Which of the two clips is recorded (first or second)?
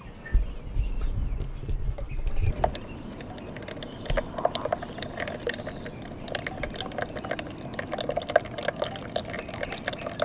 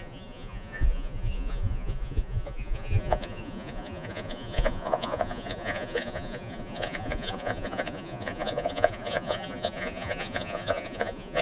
first